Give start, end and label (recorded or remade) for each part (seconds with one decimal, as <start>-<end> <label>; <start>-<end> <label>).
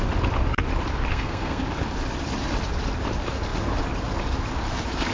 0.0-1.1 recorded; 1.1-1.6 remade; 1.6-5.1 recorded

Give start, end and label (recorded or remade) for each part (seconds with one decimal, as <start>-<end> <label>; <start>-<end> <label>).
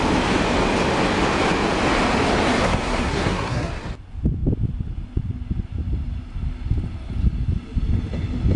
0.0-2.6 recorded; 2.6-3.7 remade; 3.7-8.6 recorded